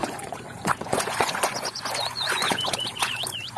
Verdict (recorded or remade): remade